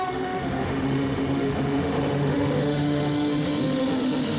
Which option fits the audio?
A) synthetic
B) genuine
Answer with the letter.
A